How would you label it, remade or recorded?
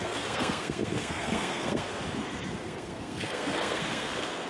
remade